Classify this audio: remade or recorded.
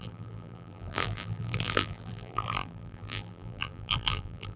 remade